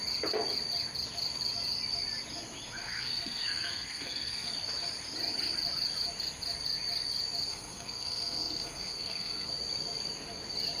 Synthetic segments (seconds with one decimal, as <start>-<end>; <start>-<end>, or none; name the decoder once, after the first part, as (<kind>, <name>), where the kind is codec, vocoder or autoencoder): 2.8-4.5 (codec, SNAC); 7.5-9.5